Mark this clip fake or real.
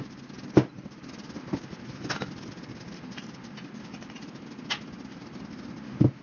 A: real